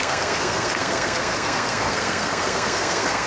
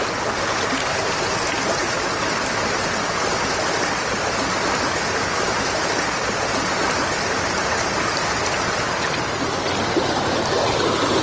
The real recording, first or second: second